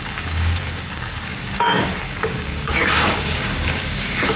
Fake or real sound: fake